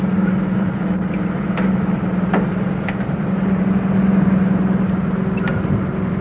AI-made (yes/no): no